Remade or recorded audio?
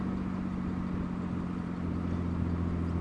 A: recorded